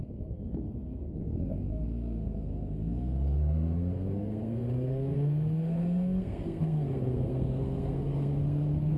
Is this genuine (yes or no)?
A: no